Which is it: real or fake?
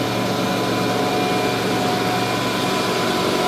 real